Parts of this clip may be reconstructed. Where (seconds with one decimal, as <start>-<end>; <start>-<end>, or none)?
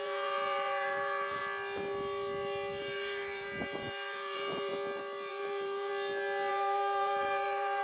0.0-1.4; 2.8-4.7; 5.3-5.9; 6.5-7.8